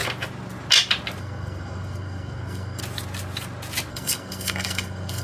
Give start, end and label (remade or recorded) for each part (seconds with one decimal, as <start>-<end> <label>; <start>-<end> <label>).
0.0-1.2 recorded; 1.2-2.8 remade; 2.8-3.9 recorded; 3.9-5.2 remade